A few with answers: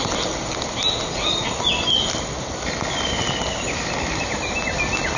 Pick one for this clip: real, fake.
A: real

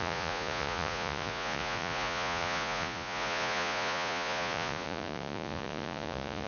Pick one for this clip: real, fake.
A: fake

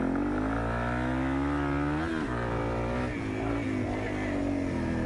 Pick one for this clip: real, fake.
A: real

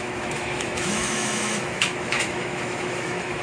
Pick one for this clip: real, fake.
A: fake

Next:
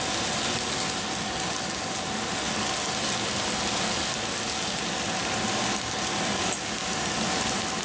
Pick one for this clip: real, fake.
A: real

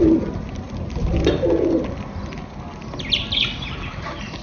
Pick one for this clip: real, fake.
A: real